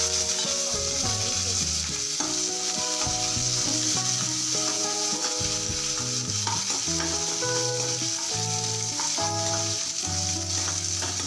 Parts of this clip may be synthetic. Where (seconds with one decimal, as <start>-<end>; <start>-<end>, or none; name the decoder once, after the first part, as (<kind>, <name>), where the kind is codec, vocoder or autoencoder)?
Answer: 4.7-5.3 (vocoder, Vocos)